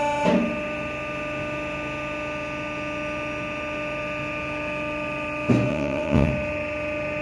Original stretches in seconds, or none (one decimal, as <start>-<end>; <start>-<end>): 0.0-5.7; 6.3-7.2